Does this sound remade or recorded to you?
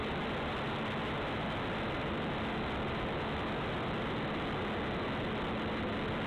recorded